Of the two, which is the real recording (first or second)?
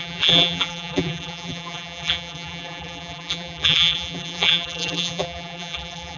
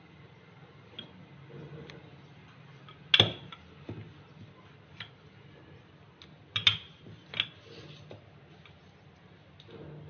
second